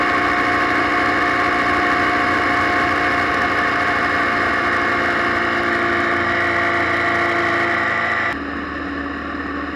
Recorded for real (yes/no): yes